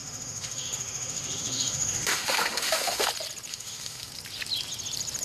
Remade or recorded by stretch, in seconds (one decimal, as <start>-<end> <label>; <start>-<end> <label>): 0.0-3.1 remade; 3.1-3.5 recorded; 3.5-4.1 remade; 4.1-5.2 recorded